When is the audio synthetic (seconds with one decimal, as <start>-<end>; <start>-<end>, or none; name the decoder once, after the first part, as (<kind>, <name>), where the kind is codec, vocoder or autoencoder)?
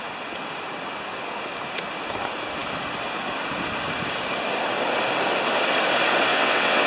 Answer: 6.3-6.9 (vocoder, WaveNeXt)